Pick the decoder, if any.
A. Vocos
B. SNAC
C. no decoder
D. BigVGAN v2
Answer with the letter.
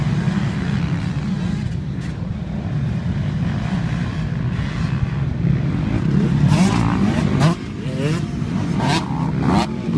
C